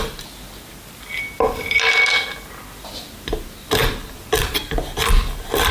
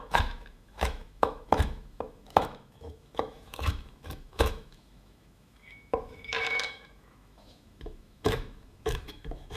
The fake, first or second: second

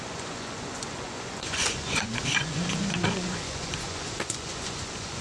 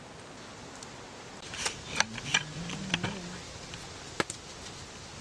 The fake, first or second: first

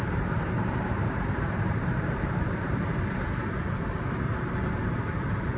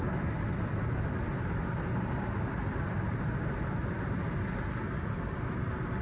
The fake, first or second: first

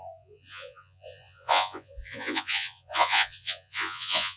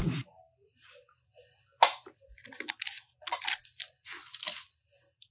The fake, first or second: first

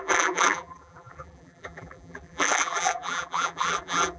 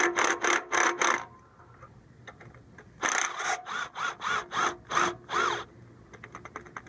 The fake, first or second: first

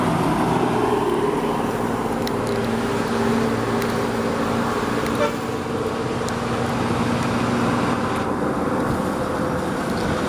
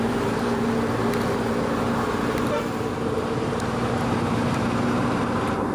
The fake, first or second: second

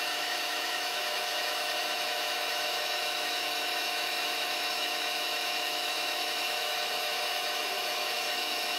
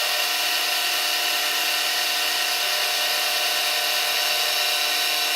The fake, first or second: first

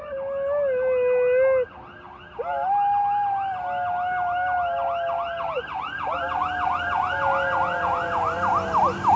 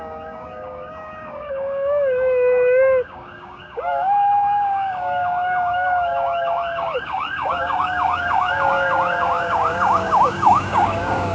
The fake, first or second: second